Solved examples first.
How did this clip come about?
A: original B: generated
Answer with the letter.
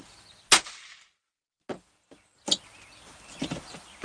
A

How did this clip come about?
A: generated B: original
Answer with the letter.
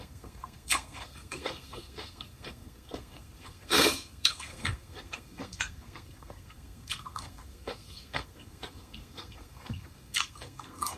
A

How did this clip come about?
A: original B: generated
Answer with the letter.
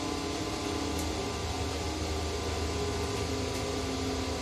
A